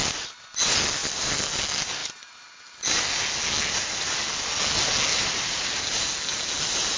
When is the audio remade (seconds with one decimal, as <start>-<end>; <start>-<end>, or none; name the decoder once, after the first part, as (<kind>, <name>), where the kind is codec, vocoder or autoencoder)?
5.1-5.8 (vocoder, BigVGAN v2)